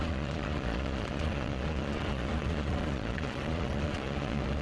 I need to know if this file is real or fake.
fake